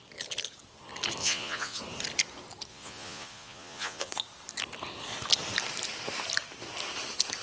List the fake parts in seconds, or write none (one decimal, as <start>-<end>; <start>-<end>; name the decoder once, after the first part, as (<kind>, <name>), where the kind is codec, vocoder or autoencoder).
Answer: 1.2-1.8 (vocoder, Vocos); 2.7-4.1

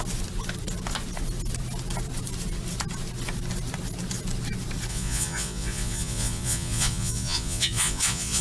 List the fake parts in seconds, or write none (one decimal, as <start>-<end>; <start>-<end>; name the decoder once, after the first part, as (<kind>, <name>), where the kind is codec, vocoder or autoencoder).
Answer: 4.9-8.4 (vocoder, Vocos)

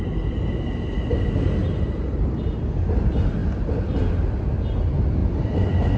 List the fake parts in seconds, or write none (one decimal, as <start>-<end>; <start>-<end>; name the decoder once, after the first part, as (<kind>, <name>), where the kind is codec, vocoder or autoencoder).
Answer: none

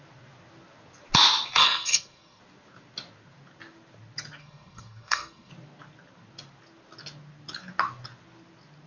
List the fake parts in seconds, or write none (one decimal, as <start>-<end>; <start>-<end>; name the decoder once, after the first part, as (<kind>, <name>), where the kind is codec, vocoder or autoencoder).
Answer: 1.5-2.4 (codec, SNAC); 4.4-5.5

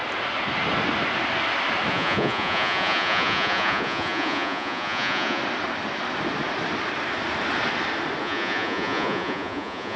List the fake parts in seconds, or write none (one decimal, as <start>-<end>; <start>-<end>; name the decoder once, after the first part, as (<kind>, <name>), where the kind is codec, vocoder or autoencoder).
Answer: 1.9-5.4 (vocoder, Vocos); 8.2-10.0

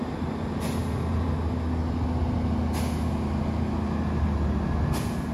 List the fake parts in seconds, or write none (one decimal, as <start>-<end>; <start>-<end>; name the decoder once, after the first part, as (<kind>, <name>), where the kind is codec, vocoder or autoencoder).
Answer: none

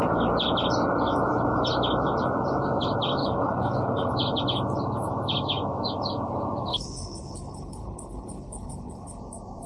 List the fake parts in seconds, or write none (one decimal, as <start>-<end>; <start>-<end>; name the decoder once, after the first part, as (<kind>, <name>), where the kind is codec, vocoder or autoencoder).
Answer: 3.2-4.1 (codec, HILCodec); 6.7-9.2

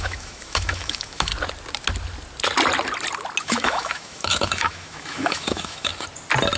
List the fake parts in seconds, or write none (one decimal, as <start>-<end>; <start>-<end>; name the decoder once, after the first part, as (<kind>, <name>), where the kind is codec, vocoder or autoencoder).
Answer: 0.0-1.3 (autoencoder, DAC-VAE); 3.4-5.9